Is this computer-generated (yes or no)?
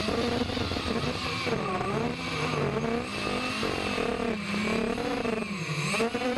no